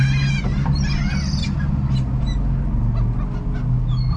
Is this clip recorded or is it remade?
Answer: recorded